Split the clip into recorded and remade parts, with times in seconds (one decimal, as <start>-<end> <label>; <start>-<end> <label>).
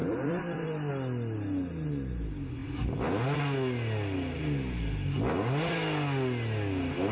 0.0-0.9 remade; 0.9-7.1 recorded